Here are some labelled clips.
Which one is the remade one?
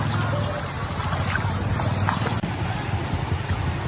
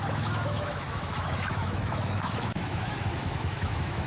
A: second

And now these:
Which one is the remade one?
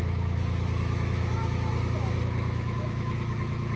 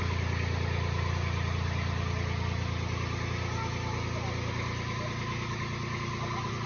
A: first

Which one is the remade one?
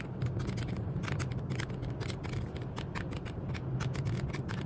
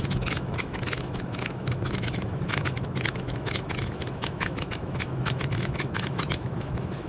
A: second